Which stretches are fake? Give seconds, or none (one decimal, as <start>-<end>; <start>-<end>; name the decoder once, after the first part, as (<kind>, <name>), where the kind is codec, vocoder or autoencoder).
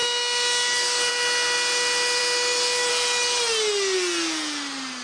none